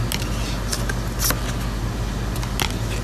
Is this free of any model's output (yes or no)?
yes